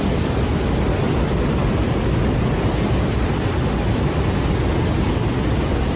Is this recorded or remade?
recorded